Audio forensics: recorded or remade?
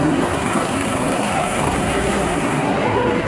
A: remade